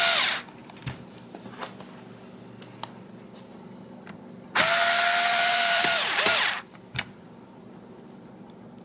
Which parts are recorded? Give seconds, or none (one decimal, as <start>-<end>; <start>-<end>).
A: 0.0-0.6; 1.6-5.3; 8.3-8.8

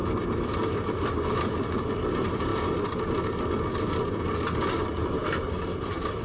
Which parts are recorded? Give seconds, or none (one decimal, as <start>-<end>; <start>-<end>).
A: 0.0-1.3; 2.5-4.7

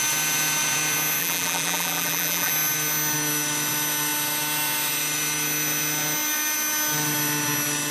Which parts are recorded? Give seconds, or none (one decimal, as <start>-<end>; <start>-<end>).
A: 0.0-1.2; 2.5-7.9

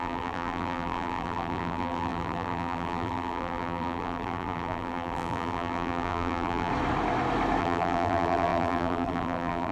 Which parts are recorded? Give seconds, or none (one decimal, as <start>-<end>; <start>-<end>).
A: 6.7-7.6

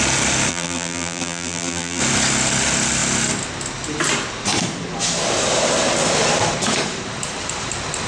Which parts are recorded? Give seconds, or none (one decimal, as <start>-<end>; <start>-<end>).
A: 0.0-0.5; 2.0-8.1